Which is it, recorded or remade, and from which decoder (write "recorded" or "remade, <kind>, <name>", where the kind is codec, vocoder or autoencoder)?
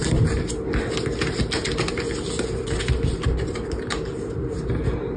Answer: recorded